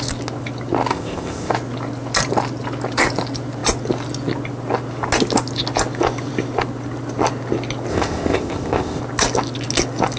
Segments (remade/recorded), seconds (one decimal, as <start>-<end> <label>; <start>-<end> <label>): 0.0-0.9 recorded; 0.9-1.5 remade; 1.5-7.9 recorded; 7.9-9.0 remade; 9.0-10.2 recorded